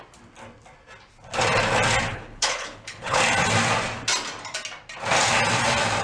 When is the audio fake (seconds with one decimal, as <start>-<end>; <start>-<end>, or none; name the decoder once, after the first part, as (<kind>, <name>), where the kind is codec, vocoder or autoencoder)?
2.1-3.2 (codec, HILCodec)